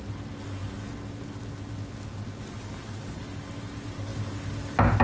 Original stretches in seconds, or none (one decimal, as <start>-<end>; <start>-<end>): 0.0-5.0